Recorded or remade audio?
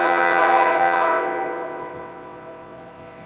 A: remade